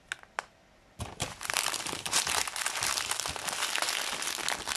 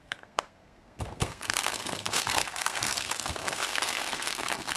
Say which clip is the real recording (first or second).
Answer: first